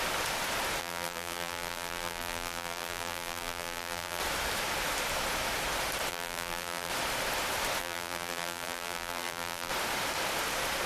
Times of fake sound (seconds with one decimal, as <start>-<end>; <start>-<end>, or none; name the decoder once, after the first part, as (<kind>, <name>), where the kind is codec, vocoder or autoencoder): 0.8-4.2 (vocoder, BigVGAN v2); 6.1-6.9; 7.8-9.7